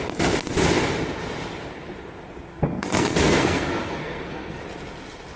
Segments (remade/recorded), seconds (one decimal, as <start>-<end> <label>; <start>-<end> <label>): 0.0-2.5 recorded; 2.5-4.6 remade; 4.6-5.4 recorded